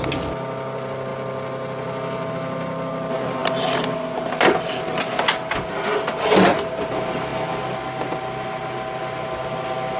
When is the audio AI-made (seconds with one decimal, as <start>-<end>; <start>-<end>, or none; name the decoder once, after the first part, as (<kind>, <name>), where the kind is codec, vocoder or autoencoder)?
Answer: none